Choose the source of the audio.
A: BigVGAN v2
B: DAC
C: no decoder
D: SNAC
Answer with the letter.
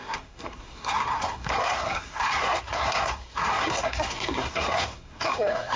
D